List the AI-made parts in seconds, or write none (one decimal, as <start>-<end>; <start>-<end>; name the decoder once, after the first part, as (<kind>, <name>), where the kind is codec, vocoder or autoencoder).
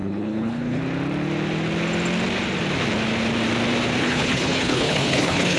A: 0.0-0.8 (codec, HILCodec); 4.0-5.6